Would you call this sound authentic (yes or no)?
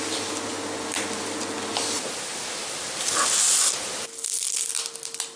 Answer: yes